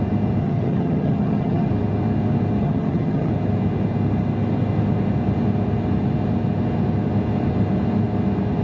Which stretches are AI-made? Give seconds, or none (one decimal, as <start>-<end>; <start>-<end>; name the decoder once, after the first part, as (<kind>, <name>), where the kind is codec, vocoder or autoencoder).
0.4-1.7 (vocoder, HiFi-GAN); 2.6-3.3